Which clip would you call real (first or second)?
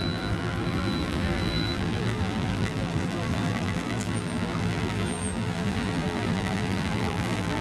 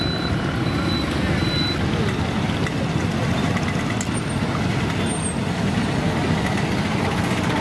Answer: second